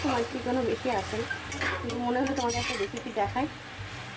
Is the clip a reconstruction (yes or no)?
no